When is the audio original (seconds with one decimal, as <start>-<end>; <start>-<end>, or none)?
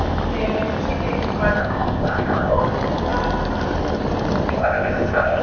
0.0-1.6; 2.6-4.6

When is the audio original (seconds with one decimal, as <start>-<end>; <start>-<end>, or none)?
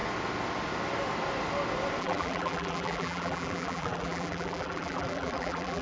0.0-2.0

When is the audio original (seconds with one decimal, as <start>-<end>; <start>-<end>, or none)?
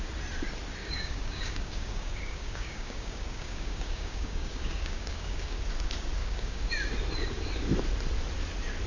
0.0-0.8; 5.6-6.2; 6.7-8.9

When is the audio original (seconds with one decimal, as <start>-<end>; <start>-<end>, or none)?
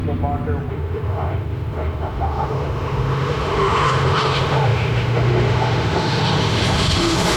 0.0-0.7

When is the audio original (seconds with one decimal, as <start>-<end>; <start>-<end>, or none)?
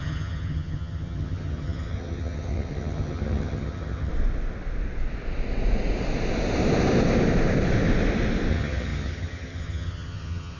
4.1-8.5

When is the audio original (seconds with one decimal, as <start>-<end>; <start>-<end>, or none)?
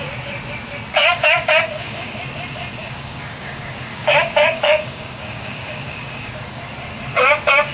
0.0-1.0; 2.2-2.8; 6.6-7.7